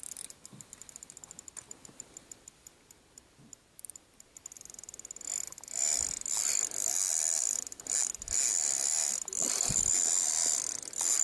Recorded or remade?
recorded